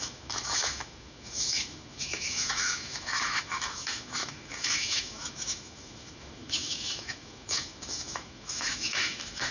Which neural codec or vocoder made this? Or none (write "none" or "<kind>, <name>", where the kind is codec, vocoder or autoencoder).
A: autoencoder, DAC-VAE